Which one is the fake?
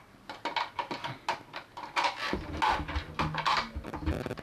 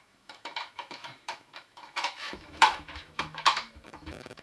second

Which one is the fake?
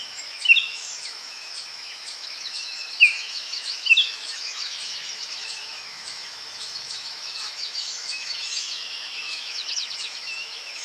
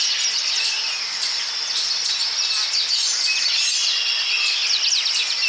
first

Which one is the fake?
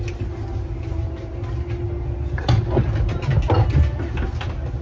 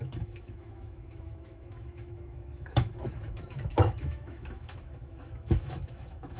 second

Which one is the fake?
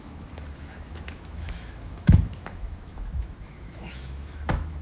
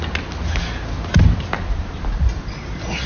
first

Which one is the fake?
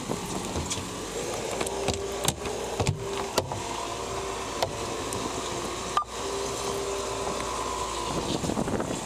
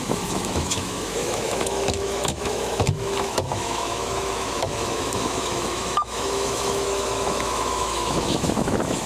second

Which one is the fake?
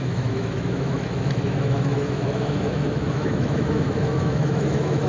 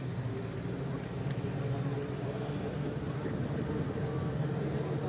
first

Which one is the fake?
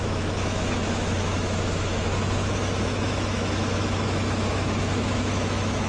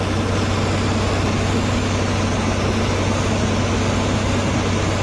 first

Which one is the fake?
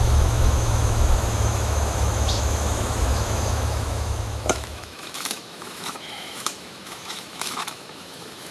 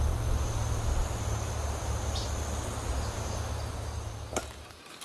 first